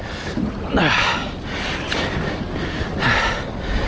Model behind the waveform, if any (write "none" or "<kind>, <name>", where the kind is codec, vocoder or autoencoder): none